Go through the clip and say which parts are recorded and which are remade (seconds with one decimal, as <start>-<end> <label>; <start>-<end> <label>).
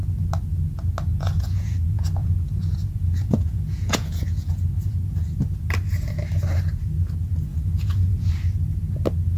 0.0-1.1 recorded; 1.1-4.6 remade; 4.6-7.5 recorded; 7.5-8.3 remade; 8.3-9.4 recorded